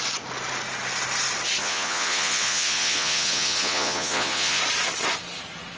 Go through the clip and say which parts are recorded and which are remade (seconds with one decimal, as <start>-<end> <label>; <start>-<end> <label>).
0.0-1.6 recorded; 1.6-4.6 remade; 4.6-5.8 recorded